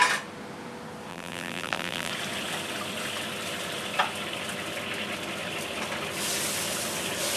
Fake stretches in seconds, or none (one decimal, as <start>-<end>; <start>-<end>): 1.1-2.1